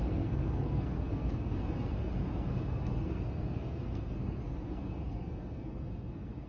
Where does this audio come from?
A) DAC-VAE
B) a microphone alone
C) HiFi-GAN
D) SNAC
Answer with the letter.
D